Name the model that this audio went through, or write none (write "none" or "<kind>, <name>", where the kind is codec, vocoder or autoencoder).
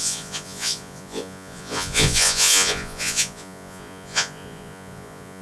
vocoder, Vocos